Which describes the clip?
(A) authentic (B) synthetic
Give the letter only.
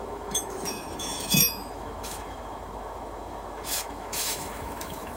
B